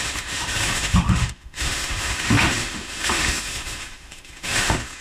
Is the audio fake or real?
fake